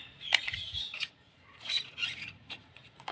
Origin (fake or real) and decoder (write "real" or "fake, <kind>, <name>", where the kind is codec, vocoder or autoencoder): fake, vocoder, Vocos